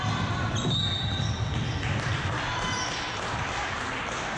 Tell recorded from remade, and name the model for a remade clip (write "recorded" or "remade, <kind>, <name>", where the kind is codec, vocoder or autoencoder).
recorded